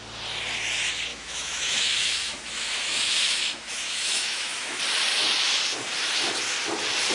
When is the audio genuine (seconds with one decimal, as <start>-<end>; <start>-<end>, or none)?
0.0-1.1; 4.8-7.1